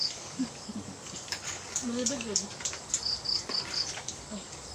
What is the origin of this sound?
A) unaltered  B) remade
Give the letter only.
B